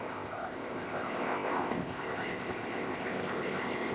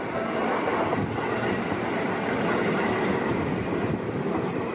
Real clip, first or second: second